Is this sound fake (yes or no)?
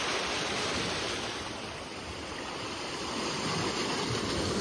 no